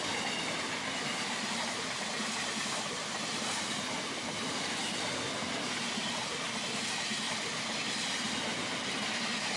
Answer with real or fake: real